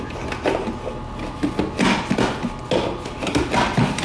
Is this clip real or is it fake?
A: real